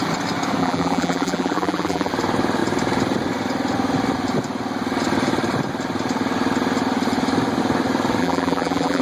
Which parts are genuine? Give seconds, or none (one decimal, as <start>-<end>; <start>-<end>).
0.0-0.6; 2.1-8.2